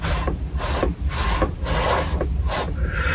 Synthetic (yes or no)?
no